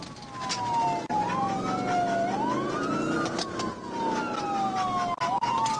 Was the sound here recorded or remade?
recorded